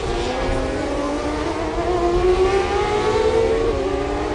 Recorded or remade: recorded